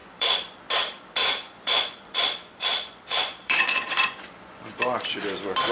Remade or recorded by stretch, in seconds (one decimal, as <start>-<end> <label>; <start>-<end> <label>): 0.0-0.7 remade; 0.7-1.2 recorded; 1.2-4.6 remade; 4.6-5.7 recorded

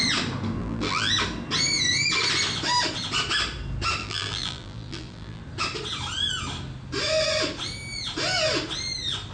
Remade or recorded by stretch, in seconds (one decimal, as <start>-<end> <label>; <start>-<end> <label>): 0.0-0.6 recorded; 0.6-1.1 remade; 1.1-4.0 recorded; 4.0-5.4 remade; 5.4-9.3 recorded

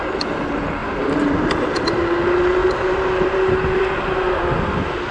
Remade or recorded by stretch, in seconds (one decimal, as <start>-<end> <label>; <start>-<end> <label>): 0.0-0.8 recorded; 0.8-1.4 remade; 1.4-2.6 recorded; 2.6-4.4 remade; 4.4-5.1 recorded

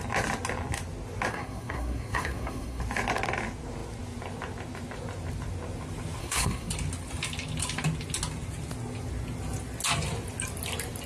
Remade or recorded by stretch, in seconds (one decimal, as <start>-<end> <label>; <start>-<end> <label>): 0.0-1.3 recorded; 1.3-2.8 remade; 2.8-6.2 recorded; 6.2-6.7 remade; 6.7-11.1 recorded

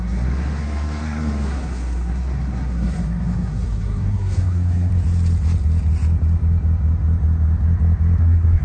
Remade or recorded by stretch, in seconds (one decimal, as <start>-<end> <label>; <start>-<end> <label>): 0.0-4.9 remade; 4.9-8.2 recorded; 8.2-8.6 remade

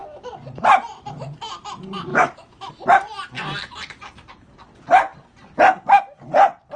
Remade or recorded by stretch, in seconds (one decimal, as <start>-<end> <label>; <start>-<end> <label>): 0.0-2.1 recorded; 2.1-2.7 remade; 2.7-6.8 recorded